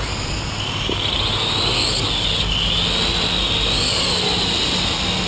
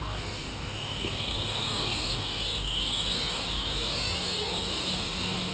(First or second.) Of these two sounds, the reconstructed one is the second